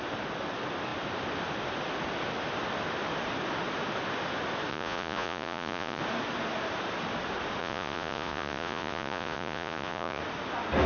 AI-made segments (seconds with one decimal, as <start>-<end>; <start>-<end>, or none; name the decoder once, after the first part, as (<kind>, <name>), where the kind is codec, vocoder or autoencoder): 4.7-6.0 (vocoder, Vocos); 7.6-10.2